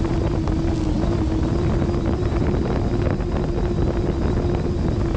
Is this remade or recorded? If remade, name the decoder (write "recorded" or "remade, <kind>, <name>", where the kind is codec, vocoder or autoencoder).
recorded